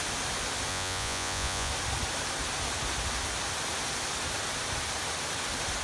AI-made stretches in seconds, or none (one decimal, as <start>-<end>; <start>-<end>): 0.7-1.7